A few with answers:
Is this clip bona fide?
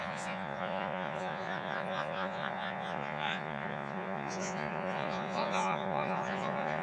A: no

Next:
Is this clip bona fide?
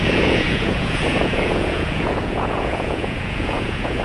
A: no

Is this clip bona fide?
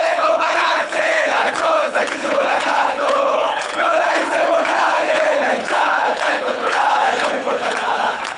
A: no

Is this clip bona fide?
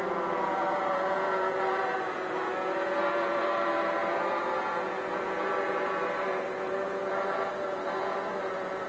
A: no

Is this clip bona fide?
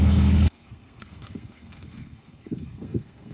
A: no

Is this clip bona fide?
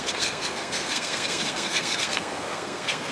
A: no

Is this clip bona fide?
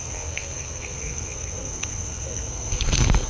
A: no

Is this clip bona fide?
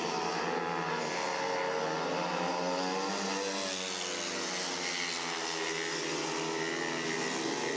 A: yes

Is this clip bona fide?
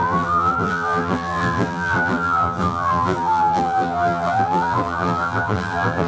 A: no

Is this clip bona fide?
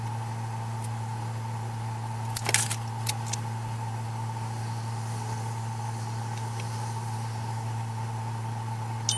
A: yes